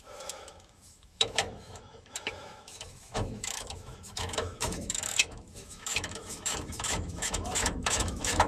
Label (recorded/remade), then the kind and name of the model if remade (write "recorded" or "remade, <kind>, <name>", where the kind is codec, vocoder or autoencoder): remade, autoencoder, DAC-VAE